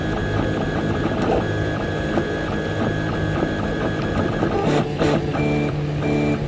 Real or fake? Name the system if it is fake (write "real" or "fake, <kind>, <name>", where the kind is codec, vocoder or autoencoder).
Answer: real